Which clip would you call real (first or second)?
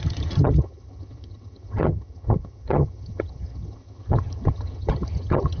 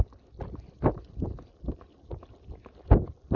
second